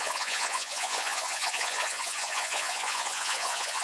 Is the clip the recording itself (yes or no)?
no